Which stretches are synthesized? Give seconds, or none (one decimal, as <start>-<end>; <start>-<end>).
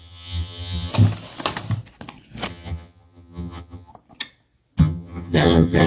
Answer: 0.0-0.9; 2.5-3.9; 4.8-5.9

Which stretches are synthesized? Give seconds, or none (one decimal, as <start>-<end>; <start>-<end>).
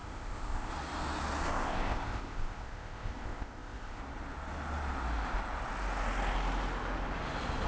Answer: 0.0-0.7; 1.5-4.0